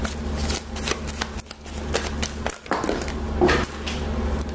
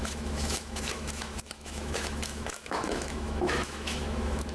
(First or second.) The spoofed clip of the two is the second